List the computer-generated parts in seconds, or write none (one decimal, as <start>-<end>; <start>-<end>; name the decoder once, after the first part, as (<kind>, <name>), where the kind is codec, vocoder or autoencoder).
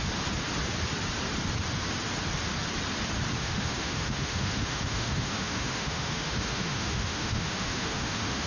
3.4-8.5 (autoencoder, DAC-VAE)